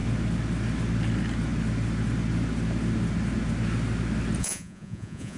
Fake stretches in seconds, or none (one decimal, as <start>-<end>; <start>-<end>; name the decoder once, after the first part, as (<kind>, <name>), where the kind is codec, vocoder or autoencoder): 4.4-5.4 (vocoder, Vocos)